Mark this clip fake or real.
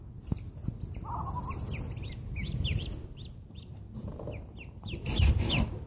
real